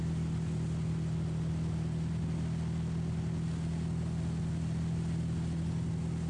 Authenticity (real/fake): real